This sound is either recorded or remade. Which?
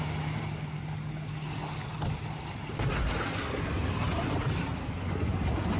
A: recorded